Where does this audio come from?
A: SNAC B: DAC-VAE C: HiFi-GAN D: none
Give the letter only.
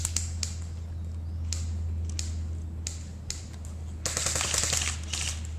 D